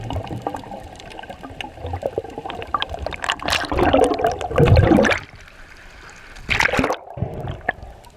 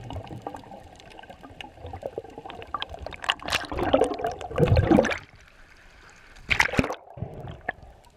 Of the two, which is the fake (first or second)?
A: second